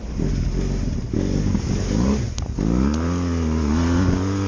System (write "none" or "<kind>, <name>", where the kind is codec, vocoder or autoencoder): none